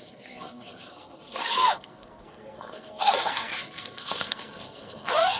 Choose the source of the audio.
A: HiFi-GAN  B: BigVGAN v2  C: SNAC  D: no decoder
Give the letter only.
C